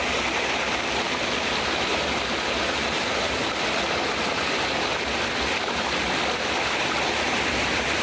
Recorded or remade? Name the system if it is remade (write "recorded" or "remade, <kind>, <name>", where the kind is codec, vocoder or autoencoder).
recorded